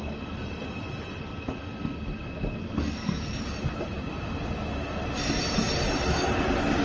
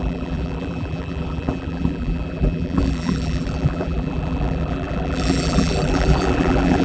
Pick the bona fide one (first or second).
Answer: first